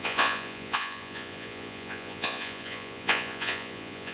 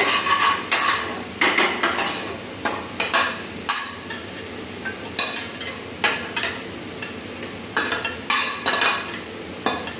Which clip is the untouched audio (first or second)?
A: second